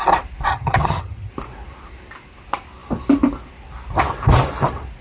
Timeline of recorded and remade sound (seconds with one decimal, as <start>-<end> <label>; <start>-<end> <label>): 0.0-0.5 recorded; 0.5-1.3 remade; 1.3-5.0 recorded